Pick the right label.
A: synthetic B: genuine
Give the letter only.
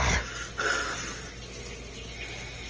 B